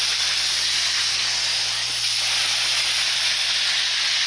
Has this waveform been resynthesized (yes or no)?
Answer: no